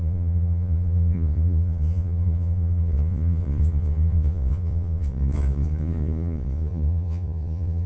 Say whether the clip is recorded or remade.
remade